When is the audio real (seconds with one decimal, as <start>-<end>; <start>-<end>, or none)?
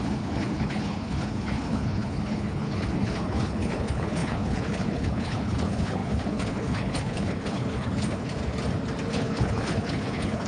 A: 8.4-9.1